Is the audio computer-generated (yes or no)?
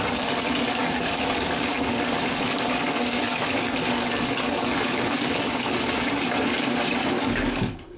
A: yes